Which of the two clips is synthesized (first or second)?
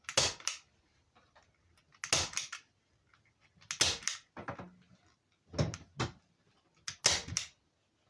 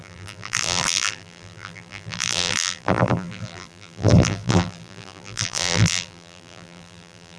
second